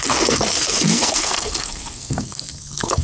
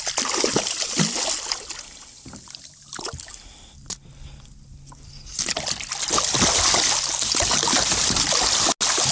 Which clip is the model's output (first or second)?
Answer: first